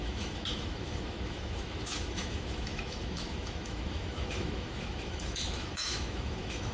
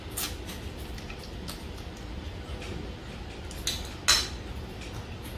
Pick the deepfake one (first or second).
first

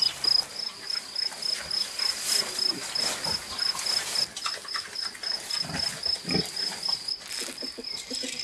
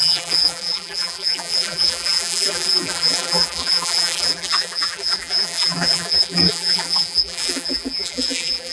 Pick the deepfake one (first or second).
second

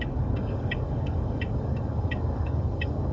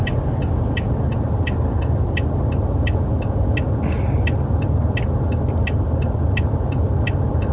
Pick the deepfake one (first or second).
first